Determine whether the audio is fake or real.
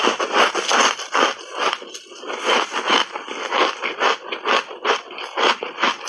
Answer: real